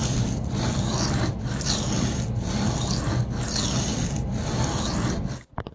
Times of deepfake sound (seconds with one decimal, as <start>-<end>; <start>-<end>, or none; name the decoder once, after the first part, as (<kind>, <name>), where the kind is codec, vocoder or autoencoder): none